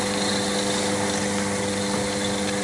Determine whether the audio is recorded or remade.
recorded